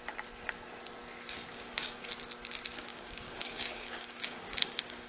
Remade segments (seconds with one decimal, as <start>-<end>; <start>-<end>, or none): 1.5-2.1; 2.9-5.1